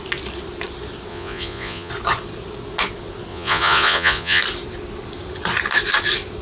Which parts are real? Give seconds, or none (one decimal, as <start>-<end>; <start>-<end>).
0.0-1.1; 1.9-3.3; 4.4-6.4